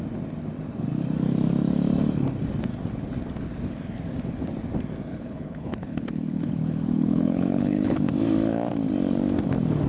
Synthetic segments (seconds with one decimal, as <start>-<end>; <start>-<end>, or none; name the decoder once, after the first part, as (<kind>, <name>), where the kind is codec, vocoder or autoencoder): 5.1-8.1 (codec, HILCodec)